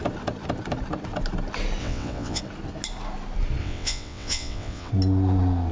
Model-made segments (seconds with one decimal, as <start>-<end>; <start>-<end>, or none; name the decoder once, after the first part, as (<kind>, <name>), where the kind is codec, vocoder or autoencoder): 1.8-2.4 (vocoder, WaveNeXt); 3.6-4.9